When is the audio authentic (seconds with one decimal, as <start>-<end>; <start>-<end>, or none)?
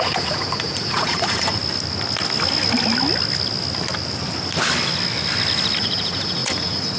1.6-5.8